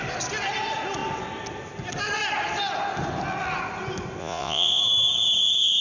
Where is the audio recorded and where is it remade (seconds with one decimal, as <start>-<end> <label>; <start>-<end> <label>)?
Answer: 0.0-4.2 recorded; 4.2-4.8 remade; 4.8-5.8 recorded